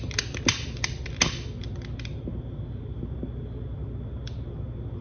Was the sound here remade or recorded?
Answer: recorded